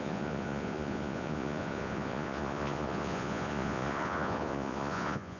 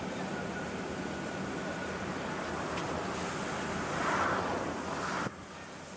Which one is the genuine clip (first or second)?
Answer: second